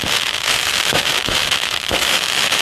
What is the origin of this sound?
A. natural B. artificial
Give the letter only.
B